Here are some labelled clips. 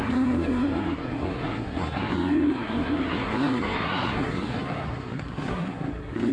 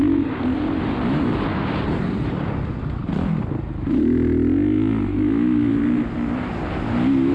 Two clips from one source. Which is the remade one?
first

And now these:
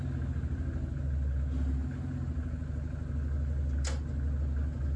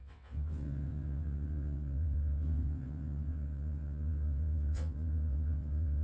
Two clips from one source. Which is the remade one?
second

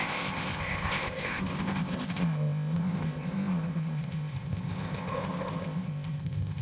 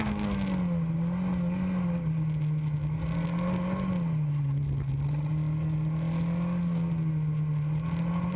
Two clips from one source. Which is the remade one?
first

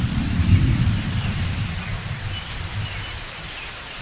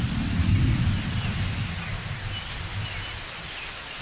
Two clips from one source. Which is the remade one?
first